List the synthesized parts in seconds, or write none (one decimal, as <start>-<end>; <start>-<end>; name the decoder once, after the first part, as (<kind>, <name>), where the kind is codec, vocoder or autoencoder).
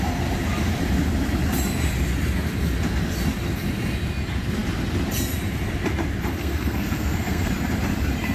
6.3-7.5 (codec, SNAC)